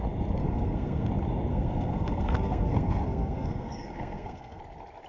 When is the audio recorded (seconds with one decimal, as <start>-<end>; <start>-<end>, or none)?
0.0-0.4; 1.1-1.5; 4.6-5.1